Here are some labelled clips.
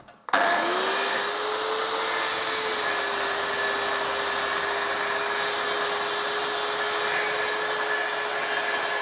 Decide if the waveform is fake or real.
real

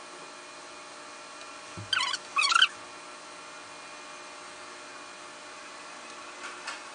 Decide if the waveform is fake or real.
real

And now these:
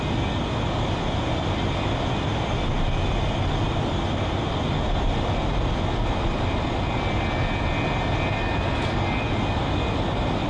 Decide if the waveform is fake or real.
real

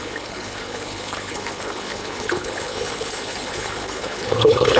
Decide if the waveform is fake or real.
fake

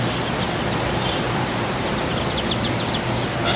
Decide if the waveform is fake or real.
real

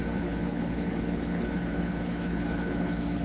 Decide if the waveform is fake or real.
fake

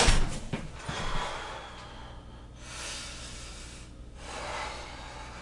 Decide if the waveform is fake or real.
real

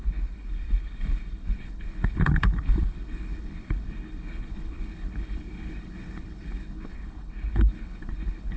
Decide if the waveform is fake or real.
fake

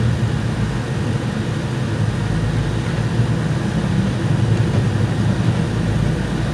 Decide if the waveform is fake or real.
real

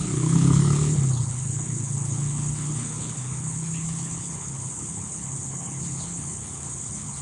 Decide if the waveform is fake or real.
fake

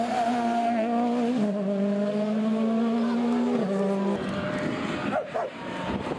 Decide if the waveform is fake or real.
real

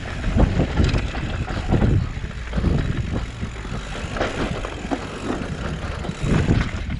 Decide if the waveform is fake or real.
real